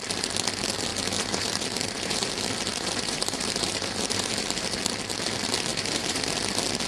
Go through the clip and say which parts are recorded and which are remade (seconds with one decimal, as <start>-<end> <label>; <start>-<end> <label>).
0.0-0.9 recorded; 0.9-2.3 remade; 2.3-2.7 recorded; 2.7-4.8 remade; 4.8-5.7 recorded; 5.7-6.2 remade; 6.2-6.9 recorded